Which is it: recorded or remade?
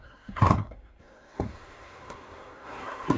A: remade